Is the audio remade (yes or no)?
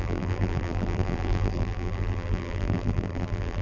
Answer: yes